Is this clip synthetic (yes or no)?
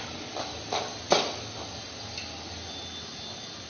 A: no